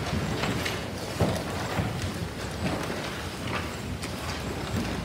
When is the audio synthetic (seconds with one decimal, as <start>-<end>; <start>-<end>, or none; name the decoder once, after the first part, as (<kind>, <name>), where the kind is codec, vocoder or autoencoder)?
0.0-0.9 (vocoder, Vocos)